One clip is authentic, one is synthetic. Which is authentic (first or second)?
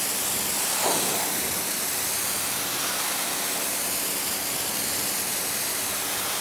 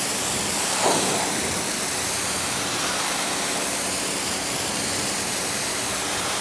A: first